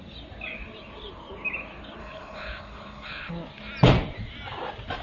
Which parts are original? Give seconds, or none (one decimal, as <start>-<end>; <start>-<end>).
0.0-2.0; 3.3-5.0